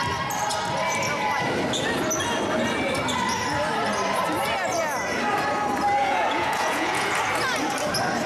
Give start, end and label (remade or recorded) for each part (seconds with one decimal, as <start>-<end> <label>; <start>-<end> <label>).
0.0-6.0 recorded; 6.0-7.1 remade; 7.1-8.3 recorded